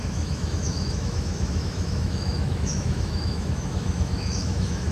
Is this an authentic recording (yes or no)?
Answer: no